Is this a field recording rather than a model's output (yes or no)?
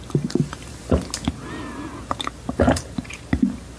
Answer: yes